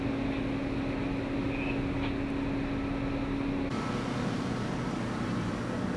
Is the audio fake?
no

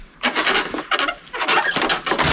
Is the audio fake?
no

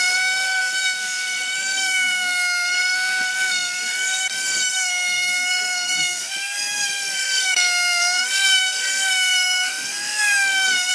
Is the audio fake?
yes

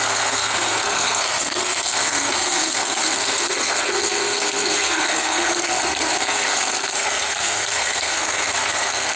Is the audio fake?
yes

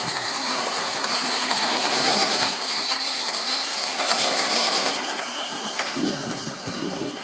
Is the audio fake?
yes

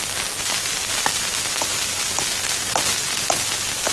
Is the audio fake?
no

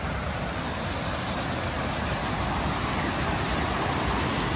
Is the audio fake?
no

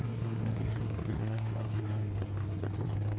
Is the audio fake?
yes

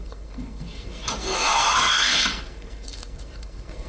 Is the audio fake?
yes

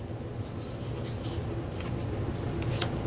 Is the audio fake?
no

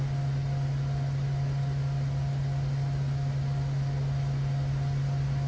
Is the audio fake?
no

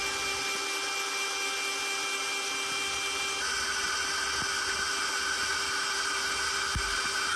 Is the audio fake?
no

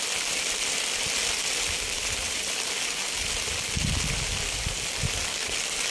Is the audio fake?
no